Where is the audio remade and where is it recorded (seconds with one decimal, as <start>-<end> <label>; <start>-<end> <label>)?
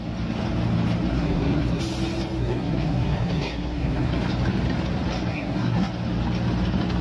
0.0-1.1 recorded; 1.1-1.8 remade; 1.8-2.4 recorded; 2.4-4.3 remade; 4.3-5.3 recorded; 5.3-5.9 remade; 5.9-7.0 recorded